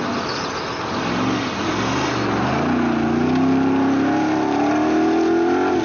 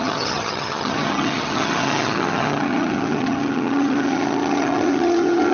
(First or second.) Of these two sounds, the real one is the first